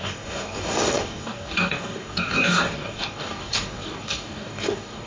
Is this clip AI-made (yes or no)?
yes